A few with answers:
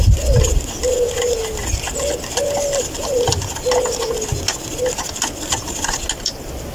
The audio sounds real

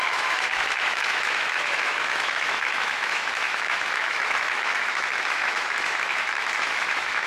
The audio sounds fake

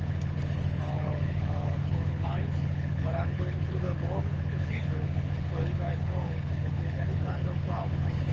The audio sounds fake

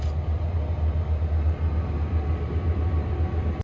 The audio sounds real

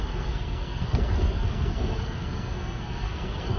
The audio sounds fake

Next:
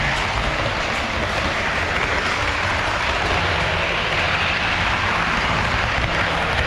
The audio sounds real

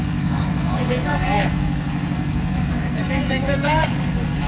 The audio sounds fake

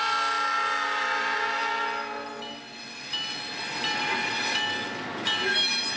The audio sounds real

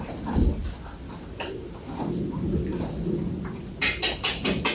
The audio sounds real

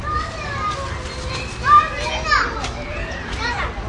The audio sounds real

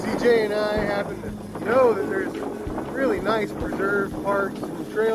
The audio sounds real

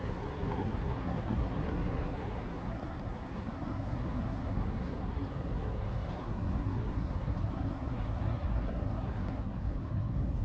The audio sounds fake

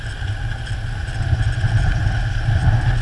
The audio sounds real